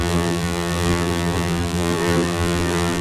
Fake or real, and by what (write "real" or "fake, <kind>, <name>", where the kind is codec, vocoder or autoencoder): fake, vocoder, BigVGAN v2